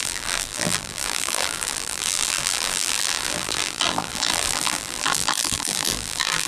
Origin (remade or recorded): remade